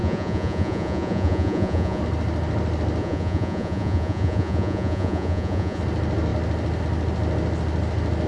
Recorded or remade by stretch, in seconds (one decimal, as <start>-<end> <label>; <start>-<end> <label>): 0.0-2.0 remade; 2.0-3.0 recorded; 3.0-5.8 remade; 5.8-8.3 recorded